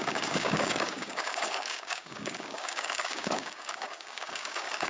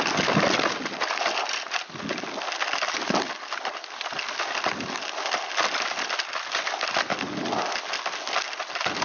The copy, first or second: first